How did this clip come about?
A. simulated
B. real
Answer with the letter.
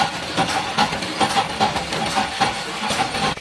B